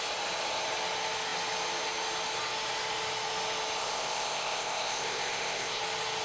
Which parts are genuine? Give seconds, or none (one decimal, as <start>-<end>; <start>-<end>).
0.0-3.8; 5.8-6.2